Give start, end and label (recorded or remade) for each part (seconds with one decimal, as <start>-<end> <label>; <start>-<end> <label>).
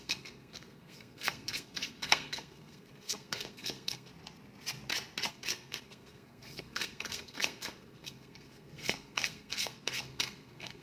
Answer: 0.0-4.1 remade; 4.1-5.3 recorded; 5.3-10.8 remade